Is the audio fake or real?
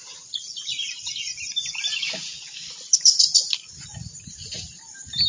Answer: real